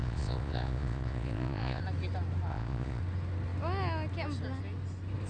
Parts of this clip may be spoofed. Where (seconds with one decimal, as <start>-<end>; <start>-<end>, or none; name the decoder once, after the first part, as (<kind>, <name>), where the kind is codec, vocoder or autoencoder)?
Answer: 0.0-1.8 (vocoder, Vocos); 2.5-3.0